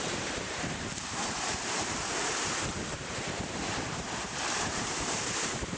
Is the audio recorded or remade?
remade